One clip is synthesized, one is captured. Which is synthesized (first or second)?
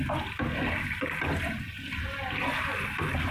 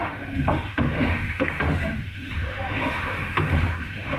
second